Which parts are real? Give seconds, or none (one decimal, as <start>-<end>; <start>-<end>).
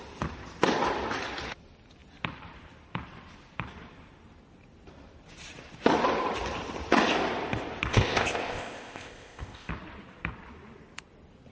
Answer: 0.0-7.9; 9.7-11.5